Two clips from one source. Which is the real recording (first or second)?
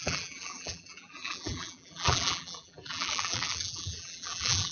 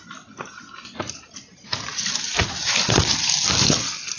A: second